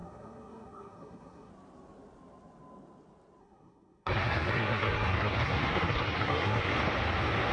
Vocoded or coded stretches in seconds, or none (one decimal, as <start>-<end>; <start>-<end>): 0.0-1.5; 3.4-6.7